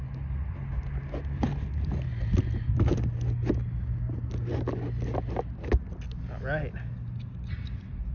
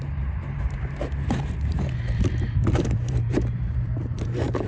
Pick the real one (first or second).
first